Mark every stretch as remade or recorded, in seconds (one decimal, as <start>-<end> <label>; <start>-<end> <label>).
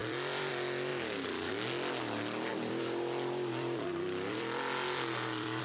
0.0-0.5 remade; 0.5-2.5 recorded; 2.5-5.6 remade